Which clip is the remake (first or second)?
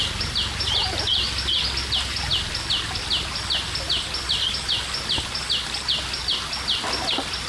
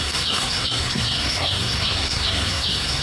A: second